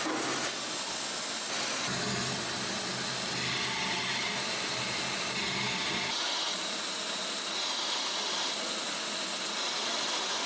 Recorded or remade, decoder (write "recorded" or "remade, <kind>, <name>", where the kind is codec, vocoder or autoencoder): recorded